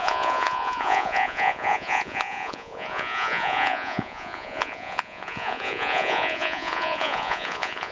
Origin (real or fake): fake